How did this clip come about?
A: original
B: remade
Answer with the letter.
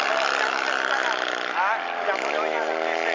A